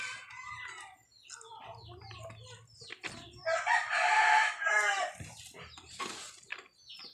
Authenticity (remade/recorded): recorded